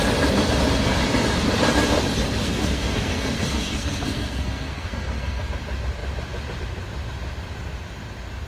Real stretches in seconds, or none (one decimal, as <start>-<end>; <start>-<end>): 0.0-2.4; 5.5-8.5